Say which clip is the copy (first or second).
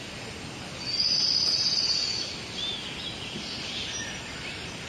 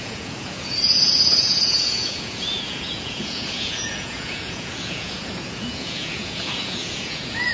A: second